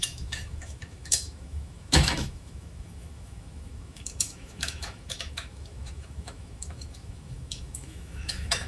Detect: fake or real fake